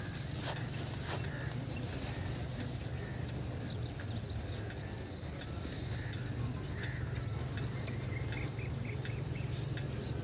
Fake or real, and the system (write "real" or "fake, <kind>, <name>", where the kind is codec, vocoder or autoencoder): real